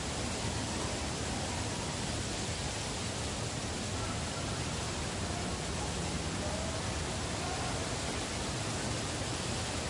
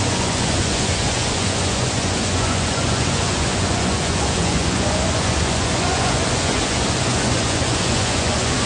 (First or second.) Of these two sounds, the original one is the first